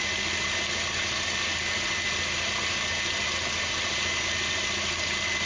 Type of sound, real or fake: real